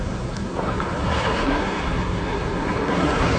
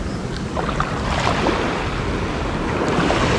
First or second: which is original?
second